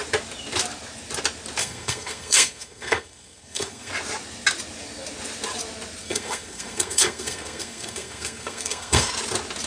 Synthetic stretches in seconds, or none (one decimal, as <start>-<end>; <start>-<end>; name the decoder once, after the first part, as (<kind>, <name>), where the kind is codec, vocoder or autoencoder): 1.6-3.9 (codec, SNAC); 6.0-9.1